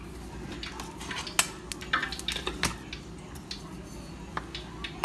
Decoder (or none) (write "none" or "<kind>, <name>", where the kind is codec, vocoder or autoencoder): none